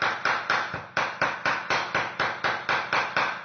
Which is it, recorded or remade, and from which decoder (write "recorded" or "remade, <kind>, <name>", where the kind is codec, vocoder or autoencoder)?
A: recorded